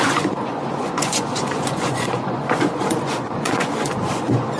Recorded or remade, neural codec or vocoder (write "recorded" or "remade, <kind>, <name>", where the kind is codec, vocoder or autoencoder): remade, vocoder, Vocos